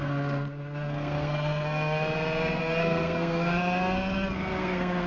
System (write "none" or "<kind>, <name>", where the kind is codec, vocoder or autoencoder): codec, SNAC